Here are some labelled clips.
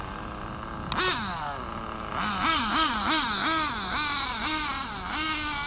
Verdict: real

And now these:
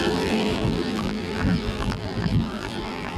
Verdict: fake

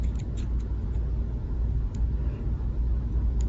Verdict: real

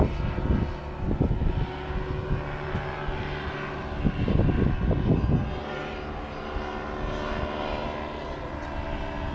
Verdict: real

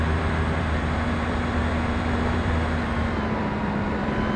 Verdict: fake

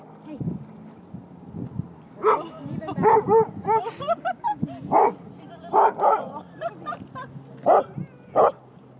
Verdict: real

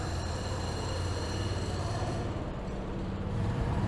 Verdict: fake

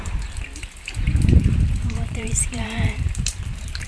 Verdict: fake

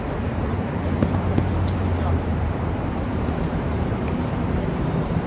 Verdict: fake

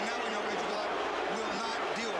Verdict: fake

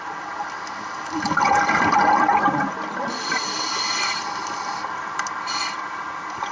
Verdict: real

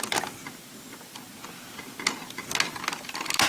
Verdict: real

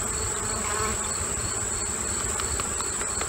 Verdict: fake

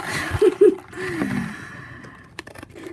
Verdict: fake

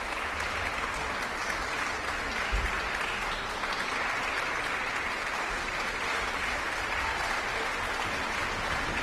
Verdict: real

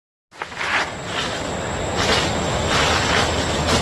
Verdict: real